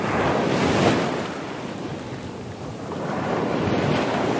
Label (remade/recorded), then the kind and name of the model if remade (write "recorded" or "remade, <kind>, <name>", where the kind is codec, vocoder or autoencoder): recorded